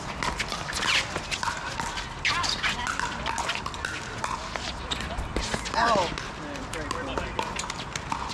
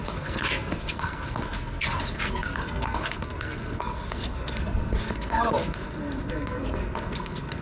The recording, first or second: first